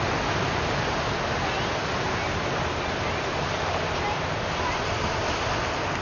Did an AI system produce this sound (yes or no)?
no